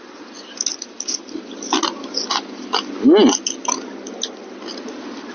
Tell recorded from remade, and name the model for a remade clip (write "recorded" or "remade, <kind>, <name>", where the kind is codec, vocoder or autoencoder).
recorded